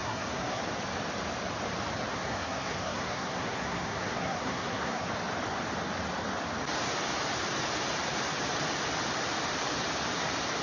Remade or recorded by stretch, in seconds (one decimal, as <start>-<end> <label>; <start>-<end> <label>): 0.0-0.6 remade; 0.6-2.1 recorded; 2.1-5.1 remade; 5.1-10.6 recorded